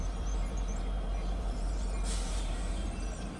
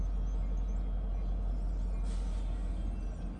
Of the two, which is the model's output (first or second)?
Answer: first